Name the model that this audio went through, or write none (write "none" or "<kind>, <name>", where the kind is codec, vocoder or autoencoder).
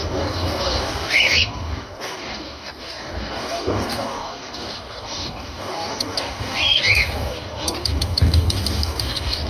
codec, DAC